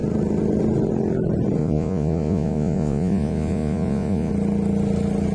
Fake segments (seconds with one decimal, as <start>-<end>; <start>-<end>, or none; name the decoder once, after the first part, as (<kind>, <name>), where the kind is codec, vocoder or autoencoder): 1.6-4.3 (vocoder, Vocos)